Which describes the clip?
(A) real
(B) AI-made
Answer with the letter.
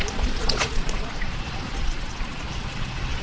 B